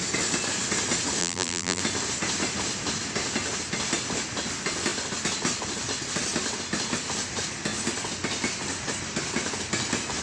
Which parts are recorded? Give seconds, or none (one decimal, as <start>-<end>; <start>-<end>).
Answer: 0.0-1.2; 1.8-10.2